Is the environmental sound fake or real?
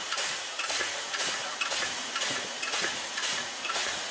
fake